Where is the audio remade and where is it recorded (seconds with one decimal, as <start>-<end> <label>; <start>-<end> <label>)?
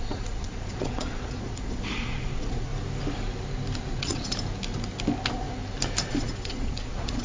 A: 0.0-2.7 remade; 2.7-3.9 recorded; 3.9-4.3 remade; 4.3-6.1 recorded; 6.1-7.2 remade